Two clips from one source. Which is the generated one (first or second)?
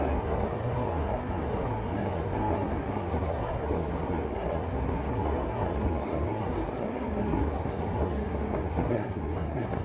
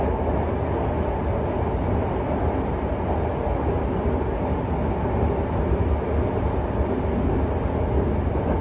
first